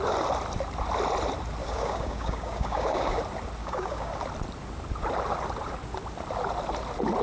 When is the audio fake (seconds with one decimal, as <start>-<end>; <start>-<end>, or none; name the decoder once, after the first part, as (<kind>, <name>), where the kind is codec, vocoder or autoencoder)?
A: 1.6-3.2 (codec, DAC); 3.6-4.1

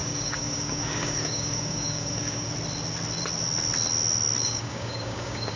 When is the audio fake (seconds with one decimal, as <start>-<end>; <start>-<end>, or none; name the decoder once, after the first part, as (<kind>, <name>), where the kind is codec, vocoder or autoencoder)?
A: 0.0-2.5 (codec, DAC); 4.4-5.6

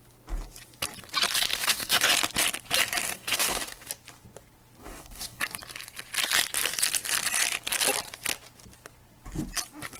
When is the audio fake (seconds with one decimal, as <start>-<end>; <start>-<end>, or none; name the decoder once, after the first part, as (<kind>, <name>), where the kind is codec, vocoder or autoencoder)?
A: 1.5-2.1 (codec, DAC); 3.0-3.9; 4.8-5.4